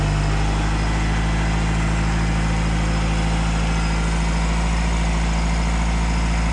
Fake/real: real